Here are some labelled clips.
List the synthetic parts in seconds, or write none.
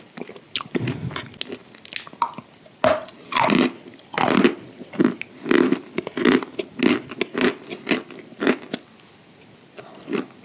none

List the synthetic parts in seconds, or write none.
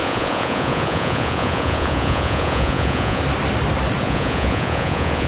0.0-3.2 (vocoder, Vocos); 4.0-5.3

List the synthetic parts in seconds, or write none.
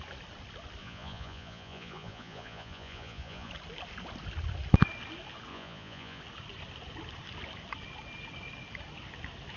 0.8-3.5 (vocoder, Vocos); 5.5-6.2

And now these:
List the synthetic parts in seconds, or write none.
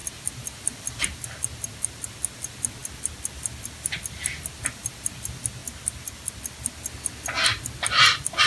none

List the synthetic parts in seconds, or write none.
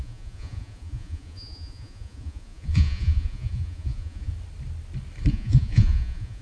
0.0-4.3 (vocoder, Vocos); 5.3-6.4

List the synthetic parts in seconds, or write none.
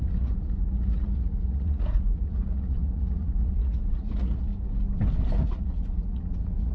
0.0-4.5 (vocoder, Vocos); 5.4-6.7